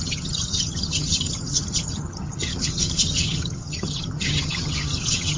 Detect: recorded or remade remade